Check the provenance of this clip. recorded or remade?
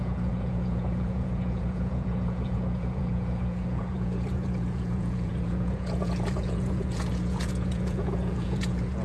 remade